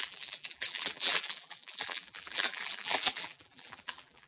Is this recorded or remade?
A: remade